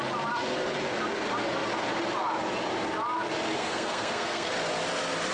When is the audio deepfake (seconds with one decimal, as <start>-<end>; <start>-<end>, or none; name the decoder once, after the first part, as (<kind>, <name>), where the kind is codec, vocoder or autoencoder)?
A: 3.6-4.5 (codec, SNAC)